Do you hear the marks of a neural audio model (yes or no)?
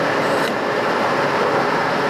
no